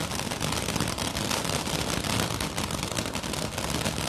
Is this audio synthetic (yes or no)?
no